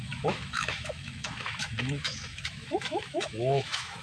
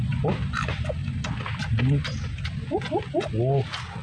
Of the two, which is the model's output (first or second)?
first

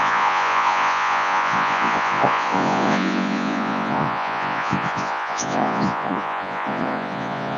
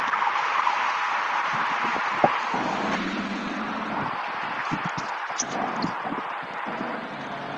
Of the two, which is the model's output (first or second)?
first